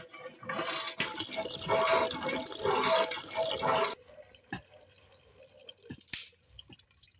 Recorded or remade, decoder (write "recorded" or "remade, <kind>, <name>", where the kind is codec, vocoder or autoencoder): recorded